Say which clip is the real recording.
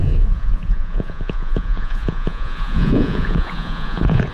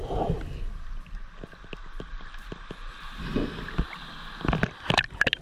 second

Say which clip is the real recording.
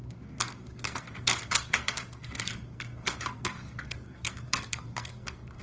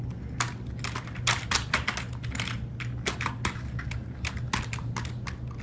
second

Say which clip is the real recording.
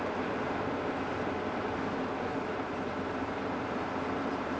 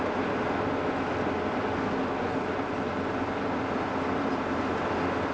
second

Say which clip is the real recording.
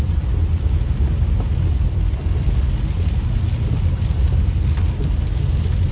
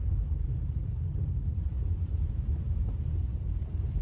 first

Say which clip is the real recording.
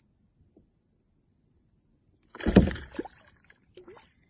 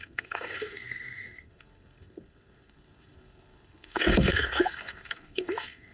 first